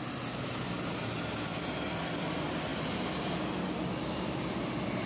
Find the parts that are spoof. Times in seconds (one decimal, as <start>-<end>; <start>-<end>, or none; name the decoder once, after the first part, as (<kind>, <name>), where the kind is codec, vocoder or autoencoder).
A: none